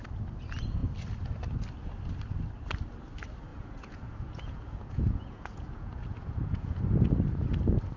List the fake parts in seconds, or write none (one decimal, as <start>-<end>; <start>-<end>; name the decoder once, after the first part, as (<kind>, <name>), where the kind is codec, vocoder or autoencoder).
3.5-6.8 (vocoder, Vocos)